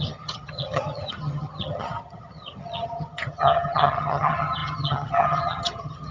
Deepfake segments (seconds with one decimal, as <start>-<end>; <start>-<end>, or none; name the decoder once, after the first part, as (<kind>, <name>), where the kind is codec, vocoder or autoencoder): 0.0-6.1 (vocoder, HiFi-GAN)

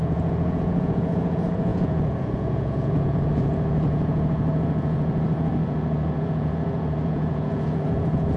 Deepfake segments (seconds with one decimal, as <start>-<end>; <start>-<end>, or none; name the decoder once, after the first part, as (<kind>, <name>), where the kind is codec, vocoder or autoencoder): 0.0-8.4 (vocoder, Vocos)

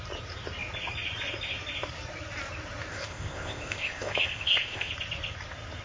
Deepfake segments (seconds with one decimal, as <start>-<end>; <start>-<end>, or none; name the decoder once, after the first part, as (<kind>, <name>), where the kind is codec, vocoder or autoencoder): 2.9-4.9 (codec, ZipCodec)

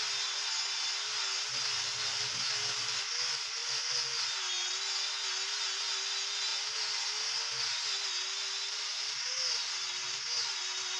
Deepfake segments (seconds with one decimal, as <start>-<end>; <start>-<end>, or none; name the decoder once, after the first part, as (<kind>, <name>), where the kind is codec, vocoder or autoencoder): none

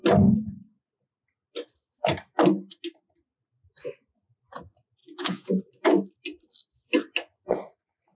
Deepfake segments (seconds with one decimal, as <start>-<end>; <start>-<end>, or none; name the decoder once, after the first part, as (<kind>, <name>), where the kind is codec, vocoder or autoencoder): 5.0-5.6 (vocoder, Vocos)